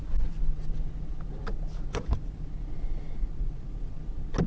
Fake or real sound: real